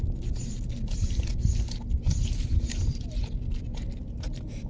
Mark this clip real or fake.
real